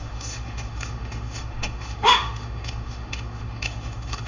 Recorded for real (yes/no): no